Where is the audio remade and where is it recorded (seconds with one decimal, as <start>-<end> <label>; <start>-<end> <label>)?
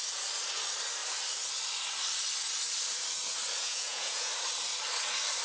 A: 0.0-3.6 recorded; 3.6-4.3 remade; 4.3-5.4 recorded